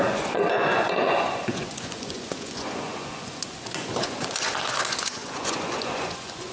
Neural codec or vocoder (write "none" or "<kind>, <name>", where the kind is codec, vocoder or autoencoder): vocoder, Vocos